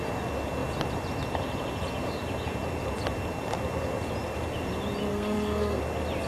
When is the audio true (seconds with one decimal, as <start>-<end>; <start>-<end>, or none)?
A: 0.0-5.1; 5.8-6.3